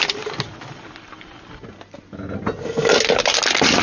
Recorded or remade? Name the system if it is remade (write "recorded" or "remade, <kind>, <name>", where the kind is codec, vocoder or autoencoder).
recorded